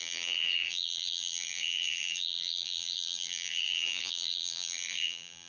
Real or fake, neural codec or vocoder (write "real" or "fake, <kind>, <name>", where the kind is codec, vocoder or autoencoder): fake, vocoder, BigVGAN v2